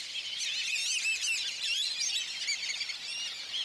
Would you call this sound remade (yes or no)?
no